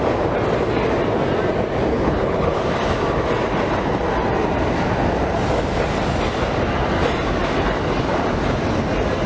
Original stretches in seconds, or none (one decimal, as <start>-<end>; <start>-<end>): 0.0-1.9; 2.6-9.3